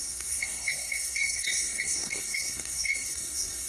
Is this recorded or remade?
remade